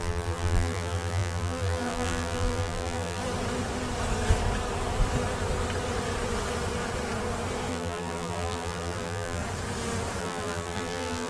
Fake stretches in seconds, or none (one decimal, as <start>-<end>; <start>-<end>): 0.0-3.2; 7.7-9.4; 10.2-11.3